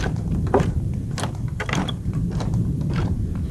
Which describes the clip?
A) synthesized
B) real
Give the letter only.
A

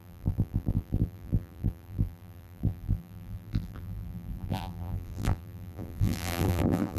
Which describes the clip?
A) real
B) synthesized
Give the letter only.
B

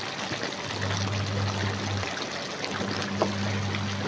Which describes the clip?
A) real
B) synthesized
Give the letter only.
A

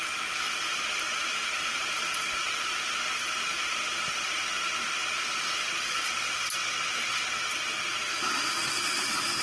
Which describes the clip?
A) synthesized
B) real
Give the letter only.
A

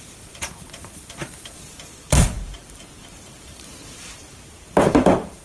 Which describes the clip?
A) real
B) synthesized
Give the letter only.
B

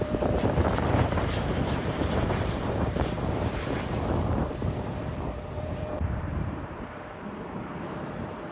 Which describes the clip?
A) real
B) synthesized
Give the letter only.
B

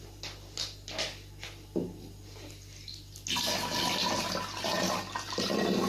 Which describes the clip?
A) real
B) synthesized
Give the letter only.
A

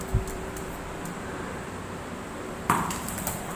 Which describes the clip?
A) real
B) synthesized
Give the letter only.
B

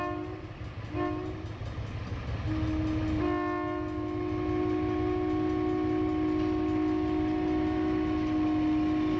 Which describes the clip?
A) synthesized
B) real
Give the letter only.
B